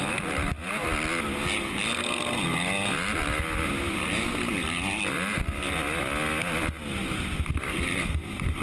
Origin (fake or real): real